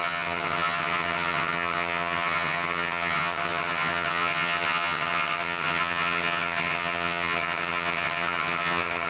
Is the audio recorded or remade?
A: remade